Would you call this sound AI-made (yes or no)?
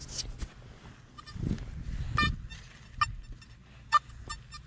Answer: no